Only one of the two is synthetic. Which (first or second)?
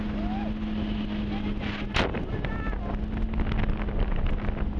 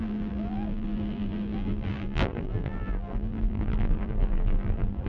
second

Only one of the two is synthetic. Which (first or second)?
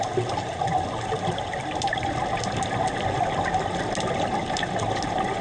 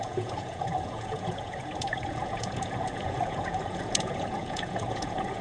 second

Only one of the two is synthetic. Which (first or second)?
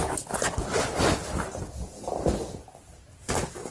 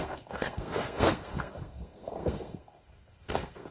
second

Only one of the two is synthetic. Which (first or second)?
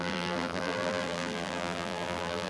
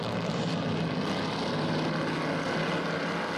first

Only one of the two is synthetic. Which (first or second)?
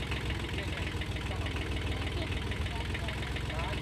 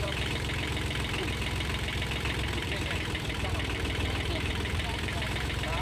second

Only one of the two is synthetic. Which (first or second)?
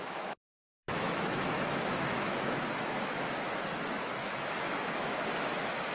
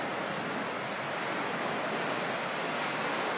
first